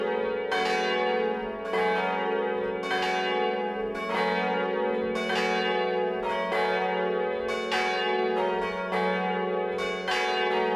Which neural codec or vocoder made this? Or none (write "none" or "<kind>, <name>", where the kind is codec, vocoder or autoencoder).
none